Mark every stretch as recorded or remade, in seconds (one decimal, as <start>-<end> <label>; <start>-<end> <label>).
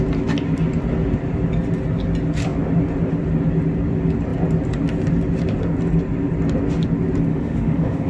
0.0-7.3 recorded; 7.3-8.1 remade